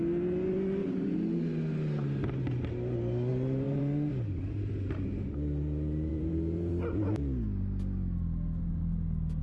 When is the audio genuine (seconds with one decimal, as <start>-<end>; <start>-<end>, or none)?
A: 0.0-3.3; 3.8-6.1; 6.7-9.4